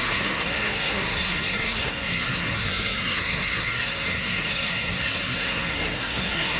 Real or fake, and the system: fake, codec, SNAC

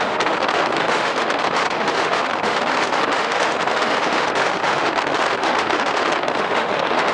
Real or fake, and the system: fake, autoencoder, DAC-VAE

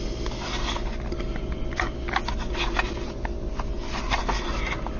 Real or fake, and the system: real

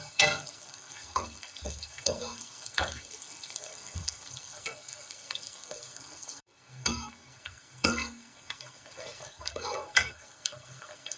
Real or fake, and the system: fake, codec, SNAC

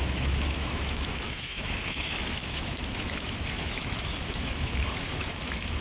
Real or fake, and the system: fake, autoencoder, DAC-VAE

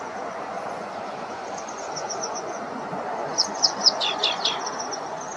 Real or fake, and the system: fake, vocoder, Vocos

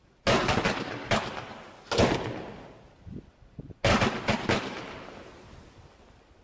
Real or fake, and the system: real